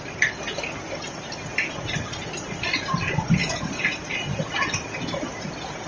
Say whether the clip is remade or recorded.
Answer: recorded